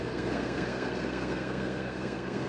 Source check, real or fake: fake